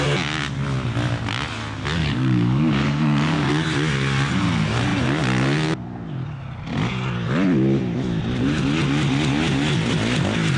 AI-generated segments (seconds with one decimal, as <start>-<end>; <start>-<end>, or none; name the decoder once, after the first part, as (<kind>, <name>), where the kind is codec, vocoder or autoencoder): 2.0-3.5 (codec, DAC)